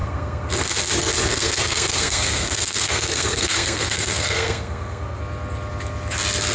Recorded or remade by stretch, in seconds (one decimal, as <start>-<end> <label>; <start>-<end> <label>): 0.0-0.5 remade; 0.5-1.3 recorded; 1.3-5.2 remade; 5.2-6.5 recorded